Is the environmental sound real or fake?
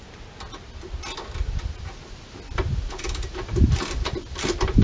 real